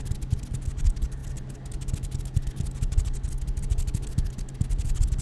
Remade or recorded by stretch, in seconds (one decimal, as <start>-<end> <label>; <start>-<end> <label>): 0.0-5.2 recorded